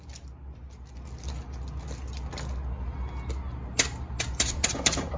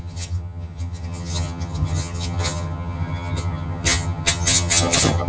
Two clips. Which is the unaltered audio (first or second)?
first